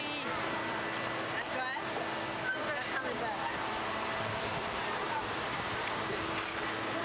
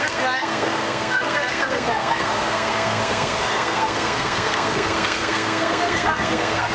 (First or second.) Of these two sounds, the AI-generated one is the second